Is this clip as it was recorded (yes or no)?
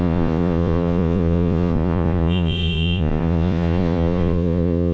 no